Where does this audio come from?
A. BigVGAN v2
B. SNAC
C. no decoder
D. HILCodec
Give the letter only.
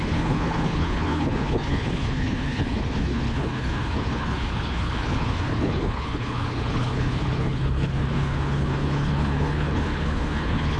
D